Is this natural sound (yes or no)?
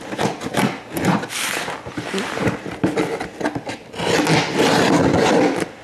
yes